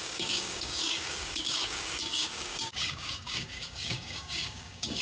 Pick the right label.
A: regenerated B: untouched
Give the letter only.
A